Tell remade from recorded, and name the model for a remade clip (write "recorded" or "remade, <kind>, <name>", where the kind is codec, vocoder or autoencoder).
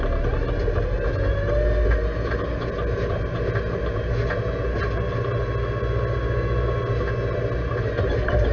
recorded